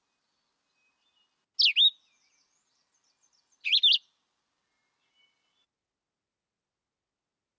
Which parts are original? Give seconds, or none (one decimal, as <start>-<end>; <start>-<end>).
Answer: 0.0-7.6